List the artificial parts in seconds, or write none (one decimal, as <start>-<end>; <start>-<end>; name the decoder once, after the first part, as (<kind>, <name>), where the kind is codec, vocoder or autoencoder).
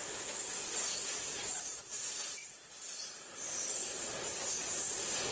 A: 1.1-2.4 (vocoder, BigVGAN v2); 3.0-5.3